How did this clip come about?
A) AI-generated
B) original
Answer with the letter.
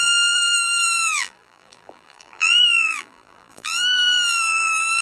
A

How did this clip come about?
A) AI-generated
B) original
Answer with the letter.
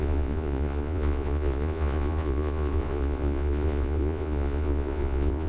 A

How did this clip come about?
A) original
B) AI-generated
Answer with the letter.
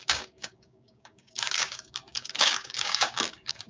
B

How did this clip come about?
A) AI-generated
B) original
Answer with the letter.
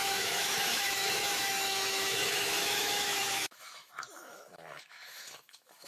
A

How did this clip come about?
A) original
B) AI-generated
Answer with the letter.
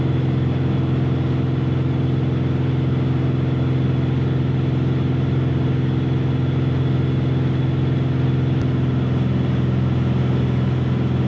A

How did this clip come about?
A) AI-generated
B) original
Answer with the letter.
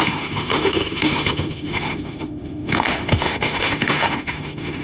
A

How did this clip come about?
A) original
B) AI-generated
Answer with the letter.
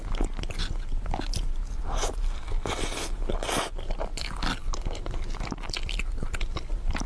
A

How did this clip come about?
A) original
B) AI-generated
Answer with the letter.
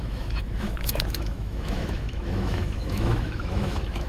B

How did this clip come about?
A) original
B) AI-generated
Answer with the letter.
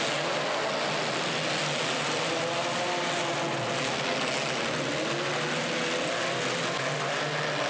A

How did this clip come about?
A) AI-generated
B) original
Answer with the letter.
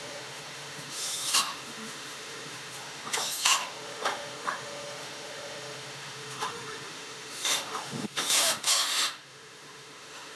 A